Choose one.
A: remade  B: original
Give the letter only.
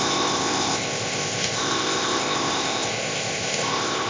A